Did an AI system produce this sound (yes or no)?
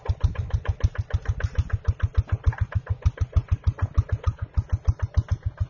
no